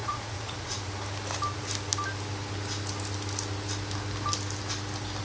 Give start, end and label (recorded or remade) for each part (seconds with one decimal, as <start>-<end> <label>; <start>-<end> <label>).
0.0-0.9 remade; 0.9-5.2 recorded